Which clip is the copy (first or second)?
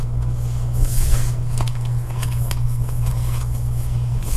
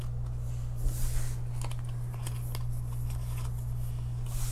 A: first